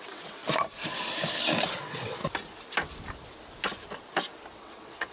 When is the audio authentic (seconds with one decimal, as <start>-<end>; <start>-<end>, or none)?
0.4-1.8; 2.2-4.5